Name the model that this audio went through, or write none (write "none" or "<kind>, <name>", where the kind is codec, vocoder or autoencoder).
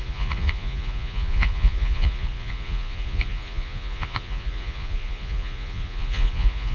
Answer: vocoder, Vocos